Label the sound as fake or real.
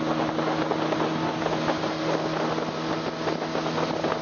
real